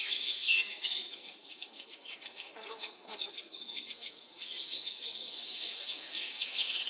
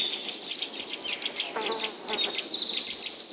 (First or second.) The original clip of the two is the second